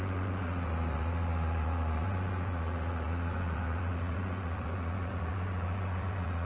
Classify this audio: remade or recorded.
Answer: remade